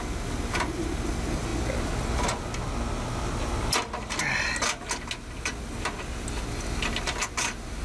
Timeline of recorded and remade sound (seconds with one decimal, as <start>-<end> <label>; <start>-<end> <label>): 0.0-7.8 recorded

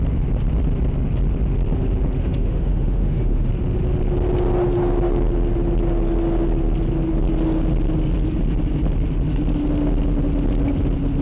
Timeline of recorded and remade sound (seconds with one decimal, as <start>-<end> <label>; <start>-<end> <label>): 0.0-2.2 recorded; 2.2-3.5 remade; 3.5-11.2 recorded

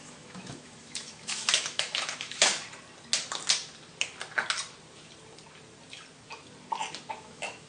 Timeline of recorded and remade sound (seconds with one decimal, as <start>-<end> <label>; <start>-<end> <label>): 0.0-2.5 remade; 2.5-7.1 recorded; 7.1-7.7 remade

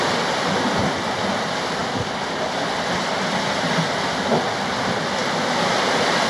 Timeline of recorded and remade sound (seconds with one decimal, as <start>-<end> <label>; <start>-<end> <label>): 0.0-6.3 recorded

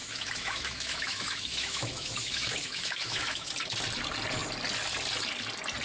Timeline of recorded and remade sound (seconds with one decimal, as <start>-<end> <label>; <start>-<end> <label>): 0.0-3.5 remade; 3.5-5.8 recorded

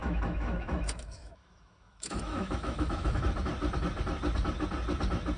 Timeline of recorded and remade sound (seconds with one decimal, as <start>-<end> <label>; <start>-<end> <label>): 0.0-3.2 remade; 3.2-5.4 recorded

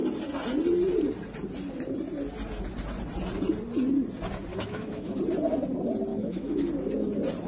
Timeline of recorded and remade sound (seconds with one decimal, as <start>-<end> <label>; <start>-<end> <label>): 0.0-4.5 recorded; 4.5-5.2 remade; 5.2-6.1 recorded; 6.1-6.7 remade; 6.7-7.5 recorded